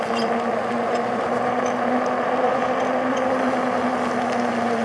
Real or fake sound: real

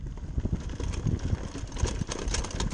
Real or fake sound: real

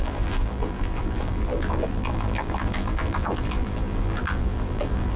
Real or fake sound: fake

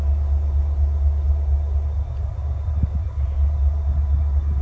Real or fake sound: real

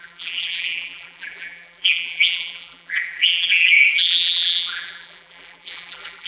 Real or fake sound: fake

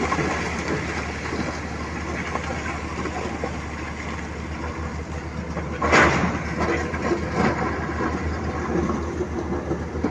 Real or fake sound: real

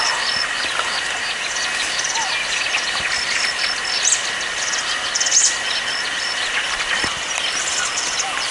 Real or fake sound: real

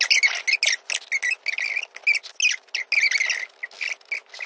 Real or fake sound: real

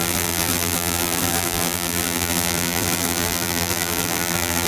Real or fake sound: fake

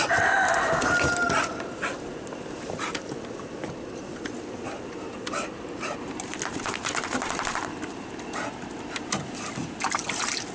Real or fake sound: real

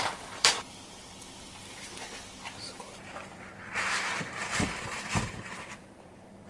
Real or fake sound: fake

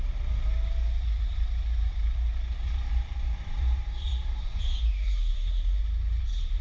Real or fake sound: fake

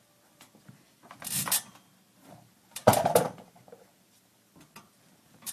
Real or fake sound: fake